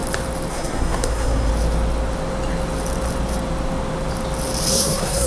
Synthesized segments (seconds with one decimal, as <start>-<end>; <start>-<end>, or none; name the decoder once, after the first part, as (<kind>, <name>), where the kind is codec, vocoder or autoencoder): 0.5-1.5 (codec, SNAC); 4.7-5.3